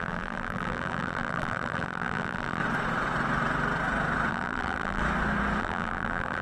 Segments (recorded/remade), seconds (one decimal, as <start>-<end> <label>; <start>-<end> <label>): 0.0-2.6 remade; 2.6-4.3 recorded; 4.3-5.0 remade; 5.0-5.6 recorded; 5.6-6.4 remade